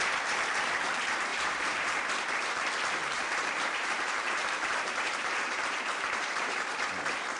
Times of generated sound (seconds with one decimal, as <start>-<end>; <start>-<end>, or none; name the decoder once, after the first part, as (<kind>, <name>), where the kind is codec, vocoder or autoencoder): 1.3-2.1 (vocoder, BigVGAN v2); 3.0-6.7